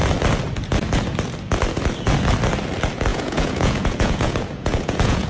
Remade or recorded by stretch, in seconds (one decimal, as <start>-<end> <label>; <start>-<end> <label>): 0.0-3.1 recorded; 3.1-5.3 remade